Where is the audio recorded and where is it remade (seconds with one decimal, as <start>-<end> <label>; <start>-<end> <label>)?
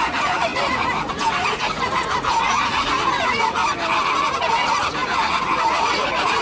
0.0-3.6 remade; 3.6-4.4 recorded; 4.4-6.4 remade